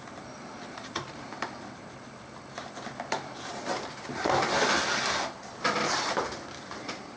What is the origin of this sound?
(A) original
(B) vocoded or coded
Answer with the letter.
B